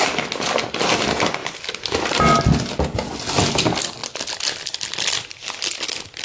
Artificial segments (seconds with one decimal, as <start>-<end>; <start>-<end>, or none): none